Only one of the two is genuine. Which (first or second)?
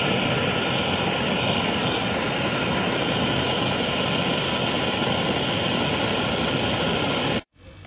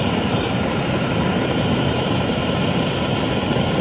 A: first